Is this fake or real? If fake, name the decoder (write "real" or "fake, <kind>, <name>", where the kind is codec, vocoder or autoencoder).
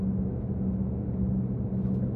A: real